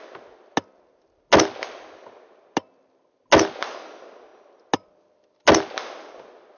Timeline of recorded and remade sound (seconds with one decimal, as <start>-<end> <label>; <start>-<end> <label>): 0.0-6.6 recorded